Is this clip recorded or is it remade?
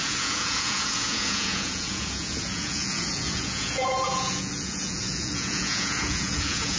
remade